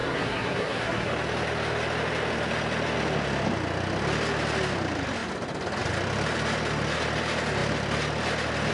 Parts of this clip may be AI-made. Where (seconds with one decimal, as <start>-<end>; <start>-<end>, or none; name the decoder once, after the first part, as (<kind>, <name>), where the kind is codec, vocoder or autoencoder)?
0.0-1.1 (codec, SNAC)